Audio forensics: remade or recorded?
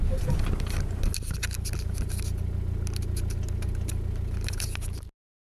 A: recorded